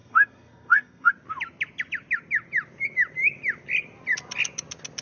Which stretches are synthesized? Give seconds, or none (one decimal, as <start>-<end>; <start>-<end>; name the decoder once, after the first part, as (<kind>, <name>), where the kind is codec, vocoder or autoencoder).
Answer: 0.0-1.1 (codec, SNAC)

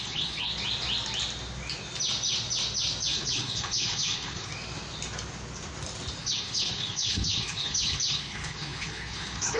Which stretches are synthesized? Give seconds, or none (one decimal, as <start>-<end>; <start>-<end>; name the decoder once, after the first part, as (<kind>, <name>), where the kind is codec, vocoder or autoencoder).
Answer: 0.0-0.5 (codec, HILCodec); 3.1-4.5; 6.2-9.6

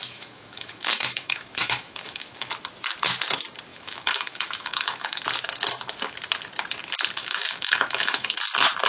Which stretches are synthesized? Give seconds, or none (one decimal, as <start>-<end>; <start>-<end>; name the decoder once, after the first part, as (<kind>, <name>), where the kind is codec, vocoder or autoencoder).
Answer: 0.0-2.5 (autoencoder, DAC-VAE); 3.7-5.2; 7.2-8.4

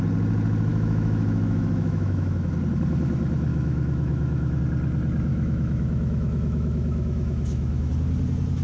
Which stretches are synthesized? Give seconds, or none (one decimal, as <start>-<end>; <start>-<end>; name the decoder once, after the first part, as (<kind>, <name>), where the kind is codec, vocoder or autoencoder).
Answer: 0.7-2.5 (autoencoder, DAC-VAE); 3.5-4.6; 5.3-7.9

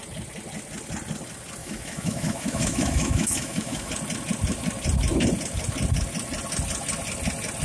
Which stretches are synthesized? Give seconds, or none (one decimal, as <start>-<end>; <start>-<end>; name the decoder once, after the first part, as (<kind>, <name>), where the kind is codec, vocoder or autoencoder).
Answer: 1.6-3.9 (autoencoder, DAC-VAE)

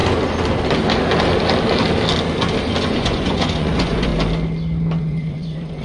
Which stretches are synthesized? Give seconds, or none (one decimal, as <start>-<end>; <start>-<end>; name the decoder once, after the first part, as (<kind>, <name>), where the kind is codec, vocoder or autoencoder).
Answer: 2.8-4.1 (vocoder, Vocos); 5.0-5.8

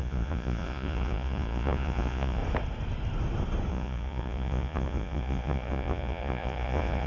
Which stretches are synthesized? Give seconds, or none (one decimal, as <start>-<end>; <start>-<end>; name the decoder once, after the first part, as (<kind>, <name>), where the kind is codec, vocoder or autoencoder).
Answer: 0.0-2.4 (vocoder, Vocos); 3.7-7.1

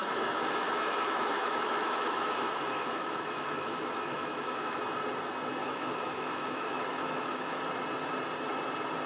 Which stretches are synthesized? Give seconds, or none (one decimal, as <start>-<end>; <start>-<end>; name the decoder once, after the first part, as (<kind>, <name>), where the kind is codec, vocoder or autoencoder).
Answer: 0.0-4.8 (autoencoder, DAC-VAE); 5.6-7.6